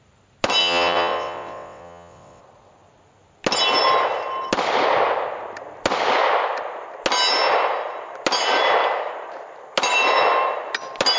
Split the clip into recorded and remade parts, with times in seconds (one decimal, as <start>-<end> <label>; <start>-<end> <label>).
0.0-0.6 recorded; 0.6-2.4 remade; 2.4-11.2 recorded